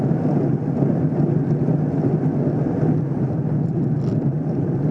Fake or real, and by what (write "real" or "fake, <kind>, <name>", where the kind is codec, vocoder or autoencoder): real